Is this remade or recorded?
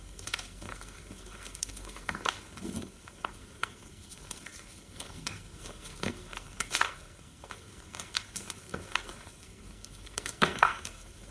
remade